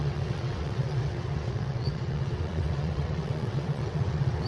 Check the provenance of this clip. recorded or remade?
remade